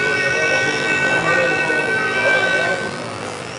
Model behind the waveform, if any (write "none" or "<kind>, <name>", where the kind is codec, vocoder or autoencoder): vocoder, BigVGAN v2